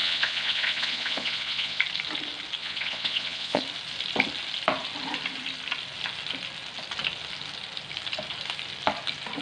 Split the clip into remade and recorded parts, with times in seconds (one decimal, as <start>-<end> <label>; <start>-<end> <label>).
0.0-1.8 remade; 1.8-2.6 recorded; 2.6-3.6 remade; 3.6-9.4 recorded